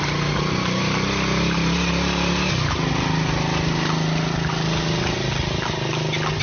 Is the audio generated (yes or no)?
no